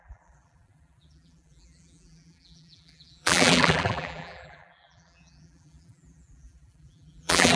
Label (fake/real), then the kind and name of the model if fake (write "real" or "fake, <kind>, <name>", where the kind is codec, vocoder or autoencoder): fake, vocoder, BigVGAN v2